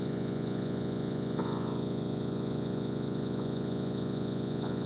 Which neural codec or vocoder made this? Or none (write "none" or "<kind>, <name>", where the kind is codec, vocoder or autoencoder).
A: vocoder, Vocos